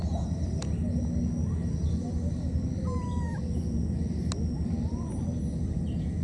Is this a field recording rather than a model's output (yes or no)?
yes